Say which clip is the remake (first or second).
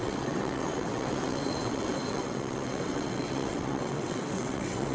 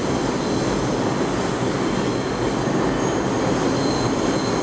first